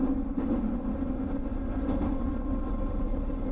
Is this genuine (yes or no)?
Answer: yes